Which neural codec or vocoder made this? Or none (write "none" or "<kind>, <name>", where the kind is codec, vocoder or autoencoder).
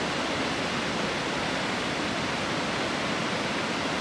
none